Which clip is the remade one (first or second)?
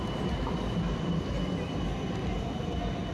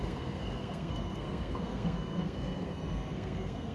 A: second